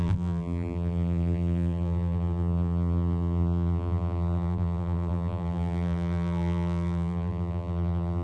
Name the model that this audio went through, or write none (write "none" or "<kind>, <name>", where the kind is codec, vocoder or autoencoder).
vocoder, BigVGAN v2